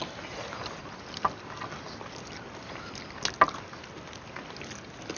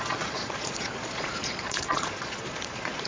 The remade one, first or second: second